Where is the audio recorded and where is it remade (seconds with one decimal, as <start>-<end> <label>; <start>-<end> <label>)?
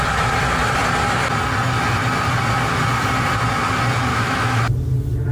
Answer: 0.0-4.1 recorded; 4.1-4.6 remade; 4.6-5.3 recorded